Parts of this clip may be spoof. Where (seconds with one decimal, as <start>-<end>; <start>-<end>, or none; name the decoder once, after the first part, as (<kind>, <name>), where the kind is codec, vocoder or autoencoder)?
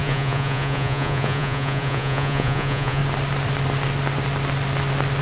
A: 0.0-3.0 (vocoder, Vocos)